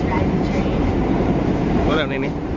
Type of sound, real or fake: fake